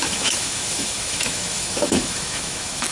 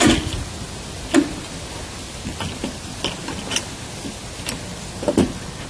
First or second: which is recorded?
second